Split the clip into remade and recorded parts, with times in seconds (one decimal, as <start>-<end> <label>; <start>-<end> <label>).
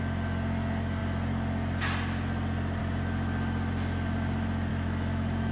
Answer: 0.0-4.7 recorded; 4.7-5.5 remade